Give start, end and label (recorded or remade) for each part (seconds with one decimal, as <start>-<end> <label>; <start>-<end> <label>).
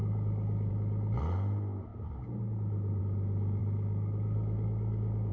0.0-0.7 remade; 0.7-3.6 recorded; 3.6-5.3 remade